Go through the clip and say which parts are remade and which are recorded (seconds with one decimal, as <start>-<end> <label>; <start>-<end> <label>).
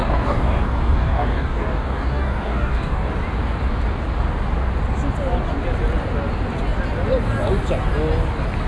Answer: 0.0-3.1 remade; 3.1-8.7 recorded